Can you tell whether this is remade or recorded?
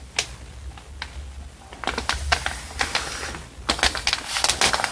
recorded